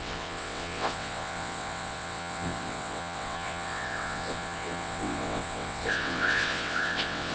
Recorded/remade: remade